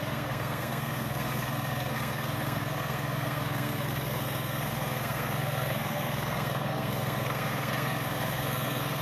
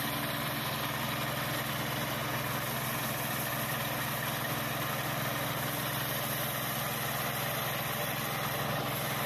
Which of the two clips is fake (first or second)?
first